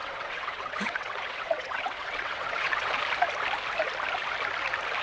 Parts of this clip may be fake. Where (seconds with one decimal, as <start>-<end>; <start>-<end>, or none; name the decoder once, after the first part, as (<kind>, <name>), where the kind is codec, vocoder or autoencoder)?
0.0-3.0 (vocoder, WaveNeXt)

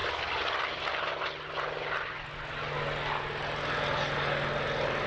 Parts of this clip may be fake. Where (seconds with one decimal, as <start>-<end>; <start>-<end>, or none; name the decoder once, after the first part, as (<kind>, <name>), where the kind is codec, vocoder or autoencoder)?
none

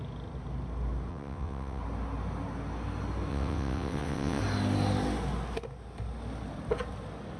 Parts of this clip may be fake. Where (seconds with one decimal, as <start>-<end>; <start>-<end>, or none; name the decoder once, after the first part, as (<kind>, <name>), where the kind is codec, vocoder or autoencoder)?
1.1-1.8 (vocoder, WaveNeXt); 3.3-4.4

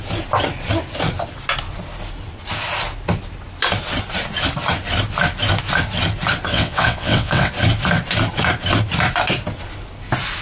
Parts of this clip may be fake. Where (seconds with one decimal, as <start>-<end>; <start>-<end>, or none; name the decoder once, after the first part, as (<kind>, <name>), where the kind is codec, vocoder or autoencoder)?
6.5-7.5 (vocoder, WaveNeXt)

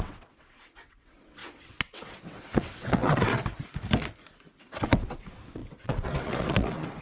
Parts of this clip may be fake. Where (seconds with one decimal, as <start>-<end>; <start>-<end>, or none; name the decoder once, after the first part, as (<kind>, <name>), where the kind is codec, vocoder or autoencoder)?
0.0-3.3 (vocoder, WaveNeXt); 4.6-7.0

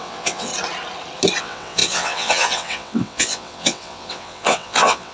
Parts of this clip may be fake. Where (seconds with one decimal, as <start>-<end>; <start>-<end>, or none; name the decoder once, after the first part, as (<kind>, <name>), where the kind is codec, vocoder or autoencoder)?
0.0-0.5 (vocoder, WaveNeXt); 1.4-5.1

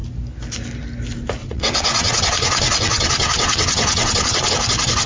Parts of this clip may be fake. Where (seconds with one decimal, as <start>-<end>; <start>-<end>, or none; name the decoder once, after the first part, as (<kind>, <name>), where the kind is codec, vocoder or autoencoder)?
1.4-4.5 (vocoder, WaveNeXt)